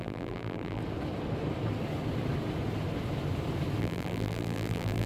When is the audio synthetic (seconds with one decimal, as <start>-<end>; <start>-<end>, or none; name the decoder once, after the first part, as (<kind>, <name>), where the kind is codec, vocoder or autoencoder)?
0.0-0.8 (vocoder, BigVGAN v2); 3.8-5.1